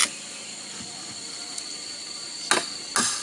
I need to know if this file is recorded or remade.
recorded